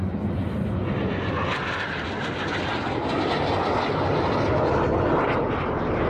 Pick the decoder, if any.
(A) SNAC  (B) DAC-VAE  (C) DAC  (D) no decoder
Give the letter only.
D